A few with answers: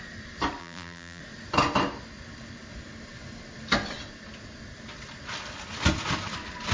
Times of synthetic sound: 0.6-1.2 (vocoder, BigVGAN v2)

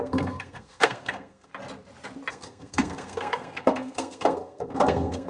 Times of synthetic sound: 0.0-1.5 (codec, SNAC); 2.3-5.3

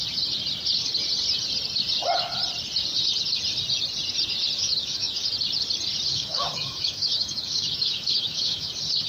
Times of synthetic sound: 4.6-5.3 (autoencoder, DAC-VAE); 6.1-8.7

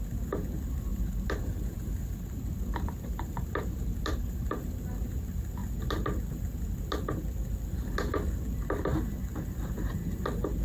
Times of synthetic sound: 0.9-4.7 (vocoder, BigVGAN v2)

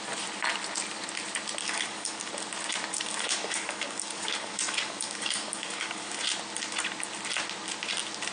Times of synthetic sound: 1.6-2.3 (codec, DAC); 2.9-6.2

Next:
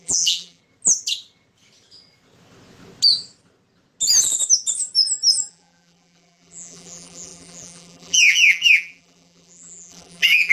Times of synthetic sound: 0.0-0.6 (vocoder, BigVGAN v2); 5.5-10.5